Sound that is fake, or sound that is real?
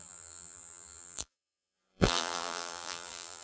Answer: fake